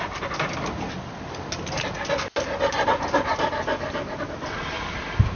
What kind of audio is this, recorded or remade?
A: recorded